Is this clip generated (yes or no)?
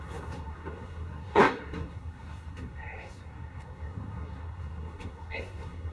yes